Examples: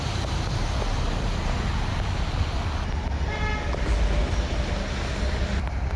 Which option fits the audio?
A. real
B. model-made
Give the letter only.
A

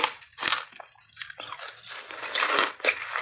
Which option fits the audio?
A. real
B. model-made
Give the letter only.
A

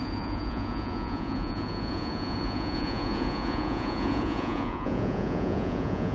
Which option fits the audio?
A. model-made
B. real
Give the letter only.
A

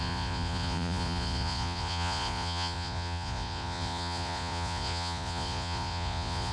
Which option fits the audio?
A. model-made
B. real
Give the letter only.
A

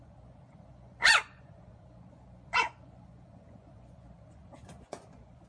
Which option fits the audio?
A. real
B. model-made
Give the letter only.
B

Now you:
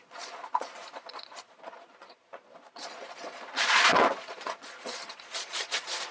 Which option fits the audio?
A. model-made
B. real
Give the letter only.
A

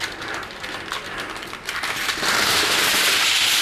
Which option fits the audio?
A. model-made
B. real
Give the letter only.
B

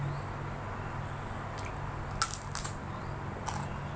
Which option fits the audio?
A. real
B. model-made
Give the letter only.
A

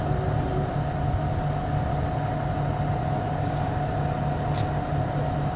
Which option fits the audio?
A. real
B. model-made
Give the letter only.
A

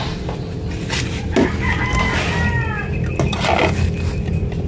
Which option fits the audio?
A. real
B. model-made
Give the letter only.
A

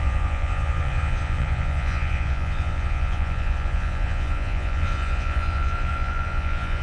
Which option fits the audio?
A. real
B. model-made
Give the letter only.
B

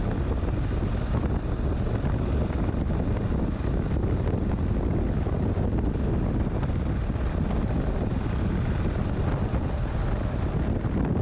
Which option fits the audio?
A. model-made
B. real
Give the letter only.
B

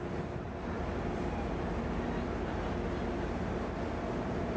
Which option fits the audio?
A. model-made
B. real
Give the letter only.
B